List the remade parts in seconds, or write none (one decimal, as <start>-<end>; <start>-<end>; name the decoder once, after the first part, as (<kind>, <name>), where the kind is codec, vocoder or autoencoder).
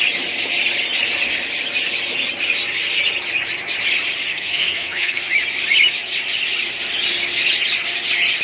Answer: 4.3-5.2 (codec, SNAC)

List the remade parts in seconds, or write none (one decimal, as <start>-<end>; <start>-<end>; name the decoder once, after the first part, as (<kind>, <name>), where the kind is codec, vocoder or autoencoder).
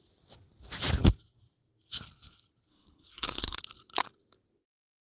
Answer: 2.7-3.6 (codec, SNAC)